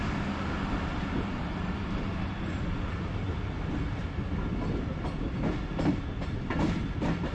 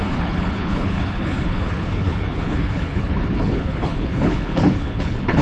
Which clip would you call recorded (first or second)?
first